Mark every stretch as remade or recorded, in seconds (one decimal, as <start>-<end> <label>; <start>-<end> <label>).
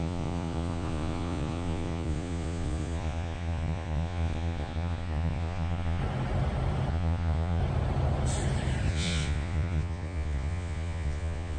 0.0-6.0 remade; 6.0-6.9 recorded; 6.9-7.6 remade; 7.6-8.9 recorded; 8.9-11.6 remade